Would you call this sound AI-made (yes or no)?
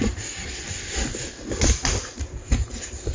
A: no